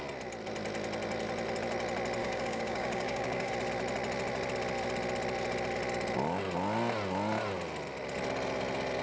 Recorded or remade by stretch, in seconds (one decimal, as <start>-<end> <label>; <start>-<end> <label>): 0.0-2.2 recorded; 2.2-3.5 remade; 3.5-9.0 recorded